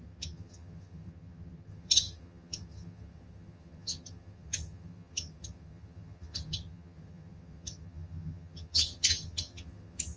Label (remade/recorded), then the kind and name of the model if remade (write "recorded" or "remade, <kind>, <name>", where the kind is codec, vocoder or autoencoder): remade, vocoder, HiFi-GAN